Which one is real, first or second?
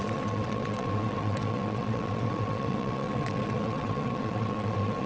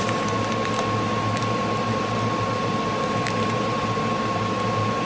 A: second